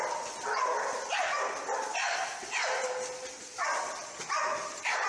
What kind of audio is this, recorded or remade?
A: recorded